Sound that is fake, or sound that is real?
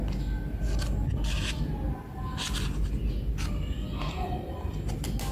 real